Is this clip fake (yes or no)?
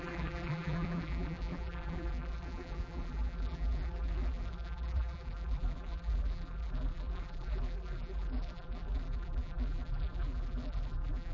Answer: yes